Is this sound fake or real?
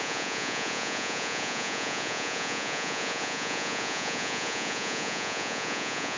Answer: fake